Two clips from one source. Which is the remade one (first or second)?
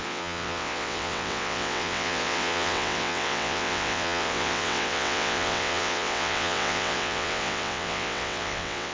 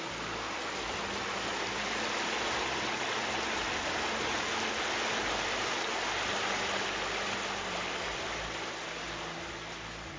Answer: first